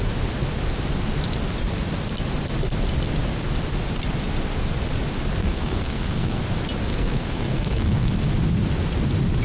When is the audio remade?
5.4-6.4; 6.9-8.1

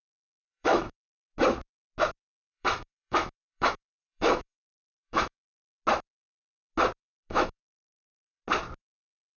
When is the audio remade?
0.0-1.3; 2.5-5.8; 7.1-8.4

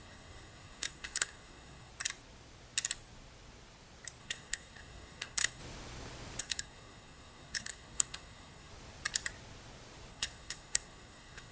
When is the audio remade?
0.0-1.9; 4.2-5.6; 6.4-8.7; 10.1-11.5

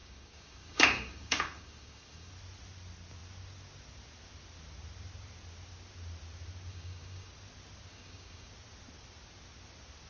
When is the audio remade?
0.0-2.3; 6.7-7.3; 7.9-8.5